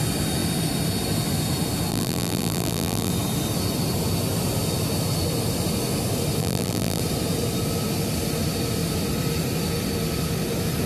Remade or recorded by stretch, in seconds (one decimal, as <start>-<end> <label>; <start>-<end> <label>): 0.0-1.9 recorded; 1.9-3.1 remade; 3.1-6.4 recorded; 6.4-7.0 remade; 7.0-10.9 recorded